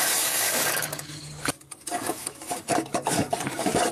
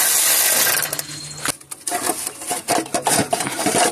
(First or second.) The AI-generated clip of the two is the first